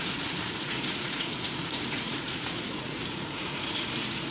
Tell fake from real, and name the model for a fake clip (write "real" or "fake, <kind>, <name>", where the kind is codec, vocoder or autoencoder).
fake, vocoder, Vocos